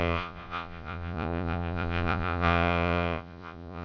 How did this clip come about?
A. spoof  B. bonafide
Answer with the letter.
A